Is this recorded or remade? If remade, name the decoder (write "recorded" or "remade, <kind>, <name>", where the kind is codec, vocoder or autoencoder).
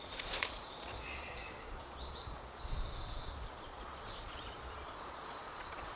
remade, vocoder, Vocos